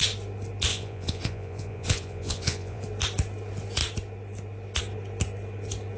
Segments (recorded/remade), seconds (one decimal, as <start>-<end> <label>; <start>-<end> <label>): 0.0-0.7 recorded; 0.7-2.8 remade; 2.8-6.0 recorded